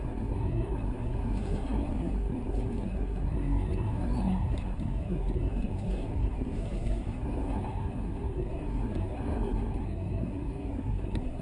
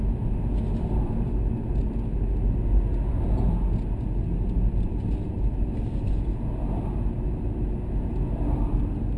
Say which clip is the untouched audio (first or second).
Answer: second